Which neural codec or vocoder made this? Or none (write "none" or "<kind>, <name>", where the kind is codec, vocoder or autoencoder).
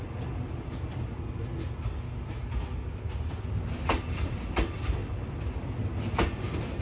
none